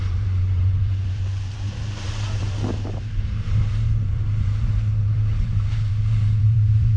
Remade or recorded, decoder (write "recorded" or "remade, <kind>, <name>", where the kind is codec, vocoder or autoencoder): remade, vocoder, BigVGAN v2